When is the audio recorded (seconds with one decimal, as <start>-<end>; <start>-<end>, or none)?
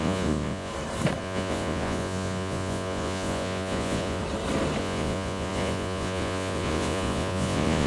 0.7-1.2; 4.2-4.8